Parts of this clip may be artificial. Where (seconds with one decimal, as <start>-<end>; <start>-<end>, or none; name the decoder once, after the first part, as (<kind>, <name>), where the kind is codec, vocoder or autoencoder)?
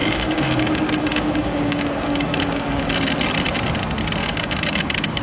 0.0-3.1 (codec, DAC); 4.2-5.2